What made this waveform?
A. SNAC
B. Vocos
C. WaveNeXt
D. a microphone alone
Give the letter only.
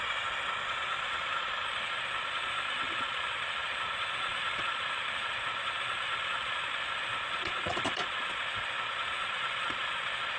B